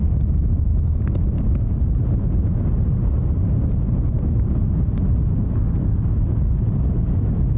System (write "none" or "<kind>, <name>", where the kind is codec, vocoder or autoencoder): none